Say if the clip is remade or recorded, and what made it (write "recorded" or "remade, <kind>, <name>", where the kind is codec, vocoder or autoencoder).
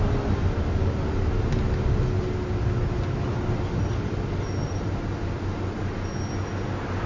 recorded